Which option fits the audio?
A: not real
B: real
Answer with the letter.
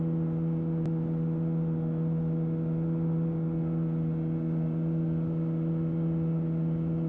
B